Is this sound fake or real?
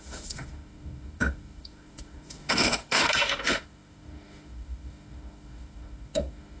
fake